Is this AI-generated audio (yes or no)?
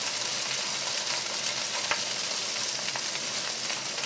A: no